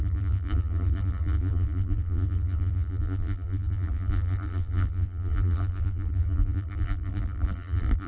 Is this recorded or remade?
remade